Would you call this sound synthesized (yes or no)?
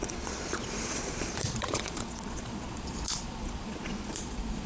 yes